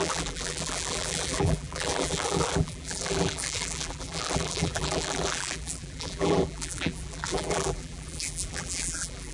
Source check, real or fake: fake